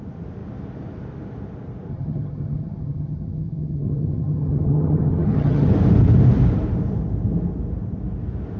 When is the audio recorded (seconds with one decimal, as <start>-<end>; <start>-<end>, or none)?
0.0-1.9; 5.7-8.6